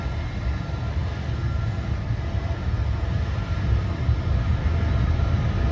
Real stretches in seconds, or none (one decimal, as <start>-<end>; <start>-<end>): 0.0-5.7